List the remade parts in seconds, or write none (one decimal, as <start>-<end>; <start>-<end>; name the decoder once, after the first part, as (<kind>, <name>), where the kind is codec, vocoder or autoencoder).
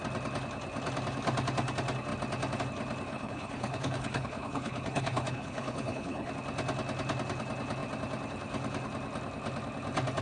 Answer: 3.1-6.3 (codec, HILCodec)